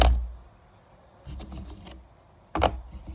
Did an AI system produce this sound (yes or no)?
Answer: no